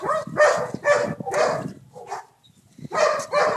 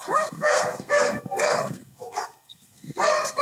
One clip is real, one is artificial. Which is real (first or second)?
first